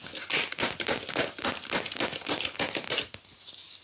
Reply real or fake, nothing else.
real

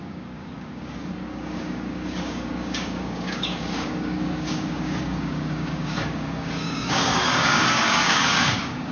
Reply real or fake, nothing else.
fake